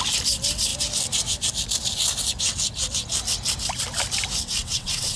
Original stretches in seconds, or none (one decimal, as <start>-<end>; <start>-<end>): 0.0-4.6